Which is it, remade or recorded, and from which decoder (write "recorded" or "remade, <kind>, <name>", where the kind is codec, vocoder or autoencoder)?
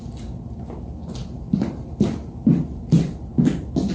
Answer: recorded